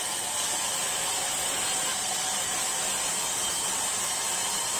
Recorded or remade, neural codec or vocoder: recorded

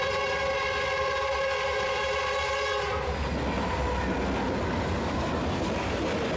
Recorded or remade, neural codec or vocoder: recorded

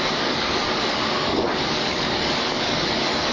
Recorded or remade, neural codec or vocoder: remade, codec, DAC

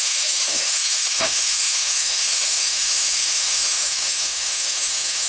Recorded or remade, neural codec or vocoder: remade, autoencoder, DAC-VAE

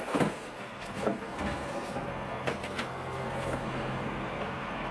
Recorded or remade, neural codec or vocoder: remade, codec, SNAC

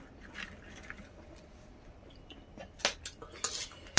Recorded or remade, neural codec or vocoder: recorded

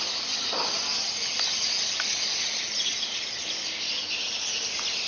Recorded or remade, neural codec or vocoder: recorded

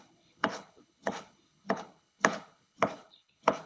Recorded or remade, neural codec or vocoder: remade, codec, HILCodec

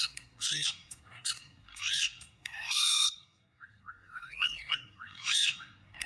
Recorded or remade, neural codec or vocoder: remade, codec, SNAC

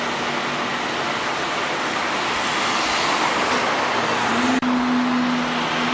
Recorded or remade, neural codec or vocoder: recorded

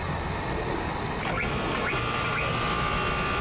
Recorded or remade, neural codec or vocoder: recorded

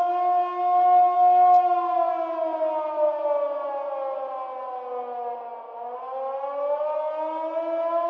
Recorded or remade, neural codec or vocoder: recorded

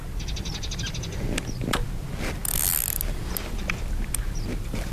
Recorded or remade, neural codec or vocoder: recorded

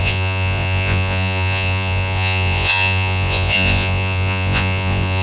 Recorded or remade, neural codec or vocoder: remade, vocoder, Vocos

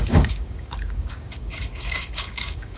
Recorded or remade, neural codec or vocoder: remade, codec, DAC